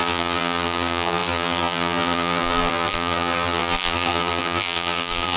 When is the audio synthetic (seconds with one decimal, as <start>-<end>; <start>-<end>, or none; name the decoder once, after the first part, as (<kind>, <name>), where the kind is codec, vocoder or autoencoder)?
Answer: 0.0-5.4 (vocoder, BigVGAN v2)